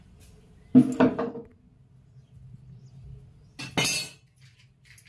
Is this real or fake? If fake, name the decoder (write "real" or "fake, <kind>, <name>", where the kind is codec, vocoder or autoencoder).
real